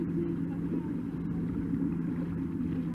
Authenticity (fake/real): real